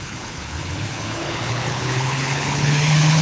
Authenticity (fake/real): fake